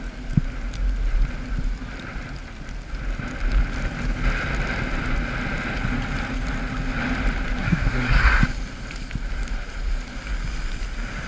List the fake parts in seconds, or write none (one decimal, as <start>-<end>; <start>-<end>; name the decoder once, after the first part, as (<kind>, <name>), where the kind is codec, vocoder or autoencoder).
7.6-8.2 (codec, SNAC)